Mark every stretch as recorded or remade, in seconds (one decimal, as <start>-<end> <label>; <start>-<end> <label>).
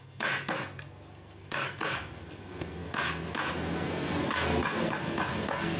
0.0-5.8 remade